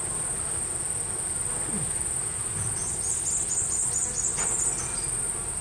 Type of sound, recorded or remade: recorded